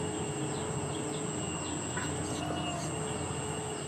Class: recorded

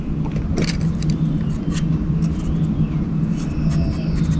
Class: recorded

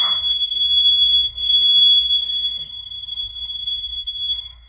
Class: remade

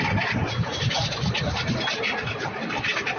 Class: remade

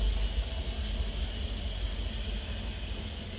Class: recorded